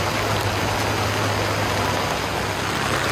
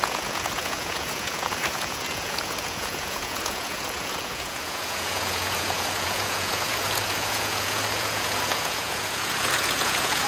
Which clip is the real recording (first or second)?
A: first